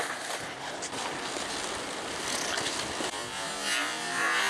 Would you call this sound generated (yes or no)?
no